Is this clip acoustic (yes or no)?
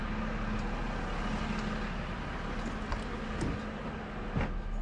yes